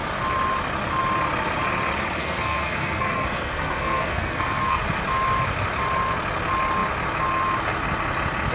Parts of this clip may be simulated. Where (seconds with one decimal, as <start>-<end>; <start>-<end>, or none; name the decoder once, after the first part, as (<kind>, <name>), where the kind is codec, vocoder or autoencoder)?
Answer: 2.2-4.8 (codec, SNAC)